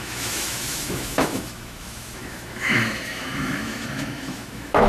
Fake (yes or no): yes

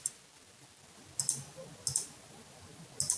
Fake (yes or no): no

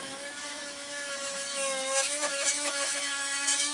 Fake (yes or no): yes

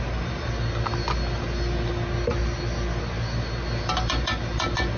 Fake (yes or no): no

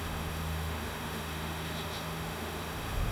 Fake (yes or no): yes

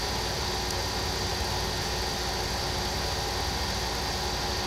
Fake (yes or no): no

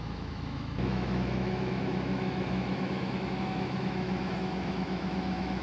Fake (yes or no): yes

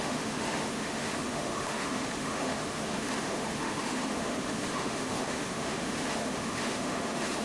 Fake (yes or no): yes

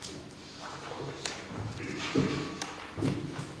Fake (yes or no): yes